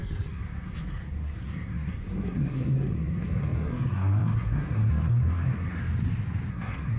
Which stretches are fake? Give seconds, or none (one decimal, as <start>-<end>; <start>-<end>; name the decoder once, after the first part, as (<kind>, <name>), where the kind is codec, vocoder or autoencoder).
0.0-5.8 (codec, SNAC); 6.5-7.0